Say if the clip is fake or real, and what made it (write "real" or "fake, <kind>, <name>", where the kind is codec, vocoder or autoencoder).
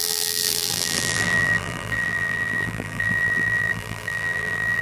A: fake, vocoder, BigVGAN v2